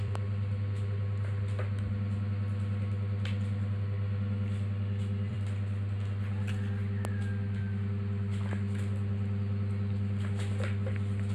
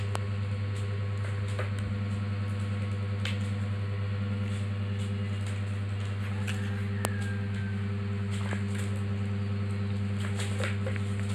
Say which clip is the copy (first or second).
first